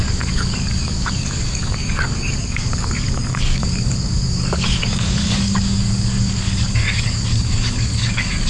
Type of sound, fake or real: fake